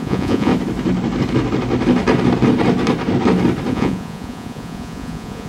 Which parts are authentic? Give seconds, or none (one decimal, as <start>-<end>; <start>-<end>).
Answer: 0.5-3.7